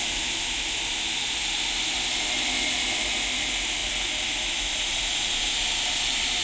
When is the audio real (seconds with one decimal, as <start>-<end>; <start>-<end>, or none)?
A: 0.0-6.4